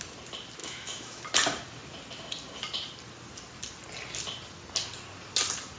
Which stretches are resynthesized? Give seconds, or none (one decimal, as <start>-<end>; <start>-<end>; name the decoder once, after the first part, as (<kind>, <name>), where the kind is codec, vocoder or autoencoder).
0.6-1.2 (autoencoder, DAC-VAE)